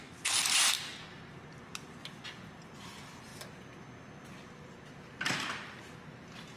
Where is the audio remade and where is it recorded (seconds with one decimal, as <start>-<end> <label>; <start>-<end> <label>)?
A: 0.0-6.6 recorded